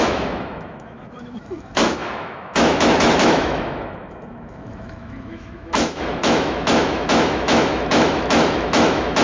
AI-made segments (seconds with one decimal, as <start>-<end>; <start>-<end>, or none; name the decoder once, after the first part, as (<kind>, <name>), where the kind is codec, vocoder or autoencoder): 0.0-9.2 (autoencoder, DAC-VAE)